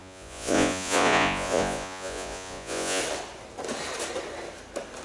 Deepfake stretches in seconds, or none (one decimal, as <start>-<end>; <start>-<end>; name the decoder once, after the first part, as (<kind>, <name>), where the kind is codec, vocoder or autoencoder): 0.0-3.0 (vocoder, Vocos)